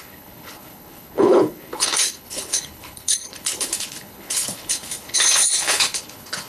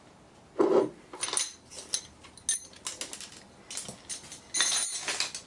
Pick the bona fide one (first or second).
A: second